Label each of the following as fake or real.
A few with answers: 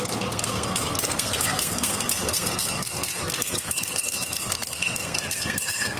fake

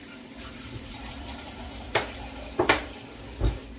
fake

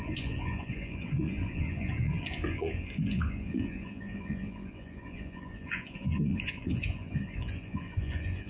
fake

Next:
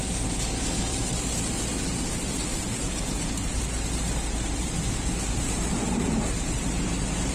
fake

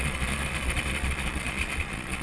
fake